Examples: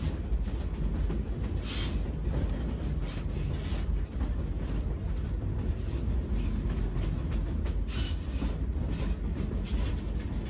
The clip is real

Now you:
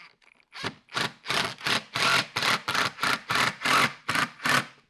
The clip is fake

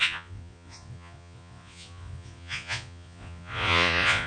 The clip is fake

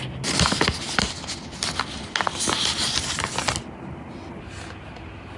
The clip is real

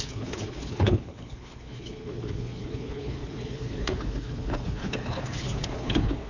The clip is fake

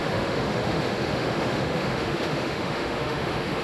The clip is fake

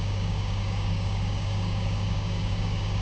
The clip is fake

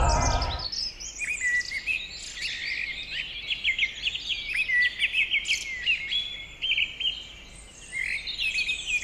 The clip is real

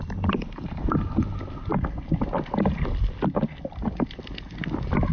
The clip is real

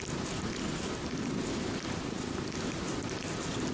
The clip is real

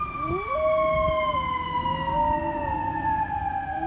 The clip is real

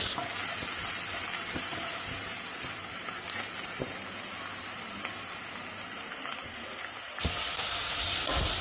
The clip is real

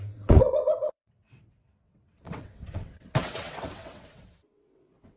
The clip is fake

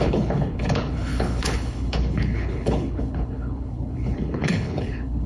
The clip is fake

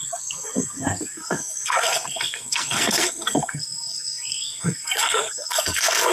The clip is fake